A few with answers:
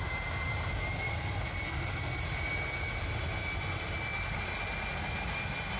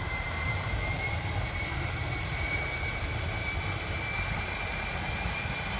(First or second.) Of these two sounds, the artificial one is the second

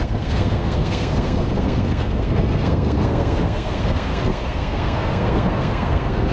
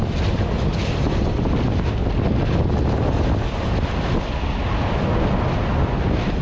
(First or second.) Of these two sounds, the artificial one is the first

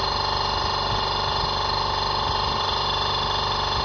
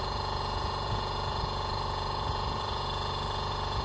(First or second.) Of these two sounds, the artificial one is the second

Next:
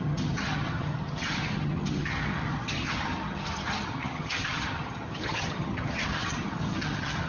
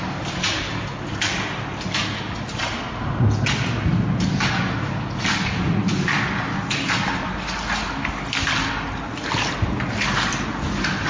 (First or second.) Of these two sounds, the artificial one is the first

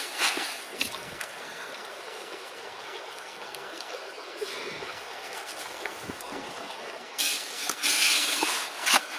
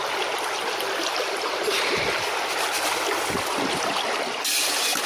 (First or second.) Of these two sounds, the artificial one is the first